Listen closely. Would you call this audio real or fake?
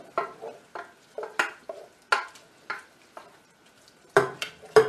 real